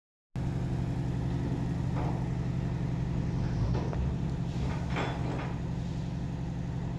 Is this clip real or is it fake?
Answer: real